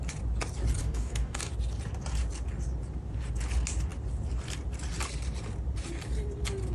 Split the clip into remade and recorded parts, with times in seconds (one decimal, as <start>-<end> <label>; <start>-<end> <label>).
0.0-0.8 recorded; 0.8-1.5 remade; 1.5-6.7 recorded